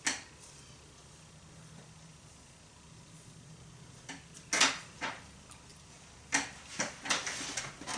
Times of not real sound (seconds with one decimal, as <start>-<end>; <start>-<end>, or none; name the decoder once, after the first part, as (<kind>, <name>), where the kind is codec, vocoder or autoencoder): none